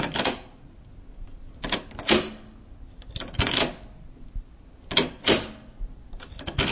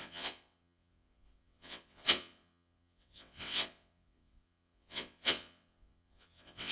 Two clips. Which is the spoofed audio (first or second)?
second